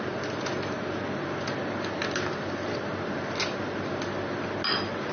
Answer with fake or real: real